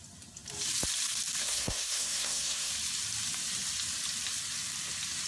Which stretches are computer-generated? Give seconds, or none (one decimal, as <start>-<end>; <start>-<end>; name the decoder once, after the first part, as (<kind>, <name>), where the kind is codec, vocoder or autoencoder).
1.4-2.7 (codec, SNAC)